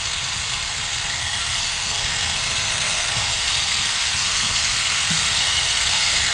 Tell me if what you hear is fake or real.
fake